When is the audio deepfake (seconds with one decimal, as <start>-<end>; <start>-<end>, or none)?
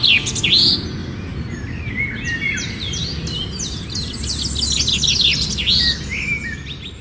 1.0-1.9; 2.3-3.0